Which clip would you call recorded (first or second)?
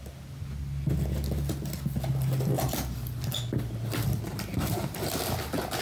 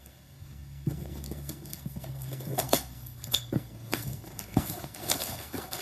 first